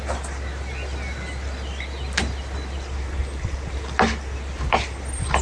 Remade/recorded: recorded